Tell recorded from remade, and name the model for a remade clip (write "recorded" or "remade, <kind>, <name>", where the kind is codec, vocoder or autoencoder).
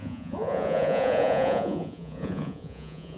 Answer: remade, vocoder, Vocos